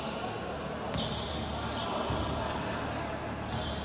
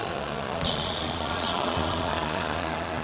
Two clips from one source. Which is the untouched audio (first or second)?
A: first